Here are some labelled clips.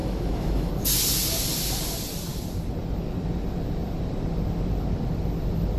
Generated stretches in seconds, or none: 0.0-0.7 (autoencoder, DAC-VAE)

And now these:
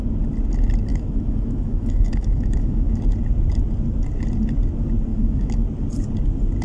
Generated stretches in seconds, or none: 0.9-3.0 (autoencoder, DAC-VAE); 5.1-5.6

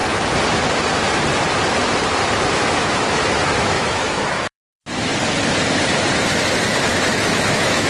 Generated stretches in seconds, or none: 2.5-5.1 (autoencoder, DAC-VAE); 6.9-7.9

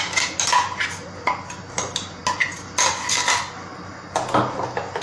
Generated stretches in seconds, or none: none

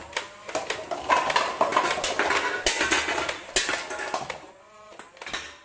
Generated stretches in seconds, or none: none

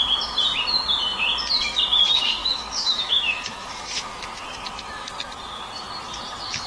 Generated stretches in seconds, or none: 2.4-5.1 (autoencoder, DAC-VAE)

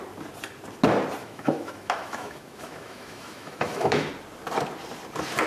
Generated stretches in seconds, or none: 1.2-4.1 (autoencoder, DAC-VAE)

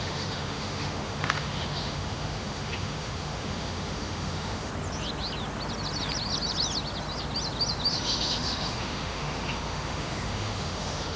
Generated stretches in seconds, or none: 0.0-4.7 (autoencoder, DAC-VAE); 7.9-11.2